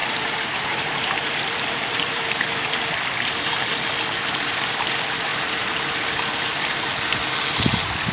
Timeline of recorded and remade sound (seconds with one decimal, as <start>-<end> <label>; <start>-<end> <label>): 0.0-2.9 remade; 2.9-5.3 recorded; 5.3-5.8 remade; 5.8-8.1 recorded